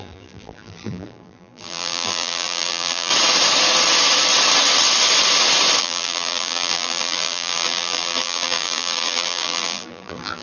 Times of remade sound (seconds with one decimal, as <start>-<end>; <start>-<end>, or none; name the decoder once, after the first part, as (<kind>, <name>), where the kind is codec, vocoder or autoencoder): 0.0-3.1 (vocoder, BigVGAN v2); 5.8-10.4